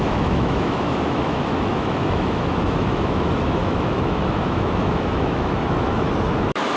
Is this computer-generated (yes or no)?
yes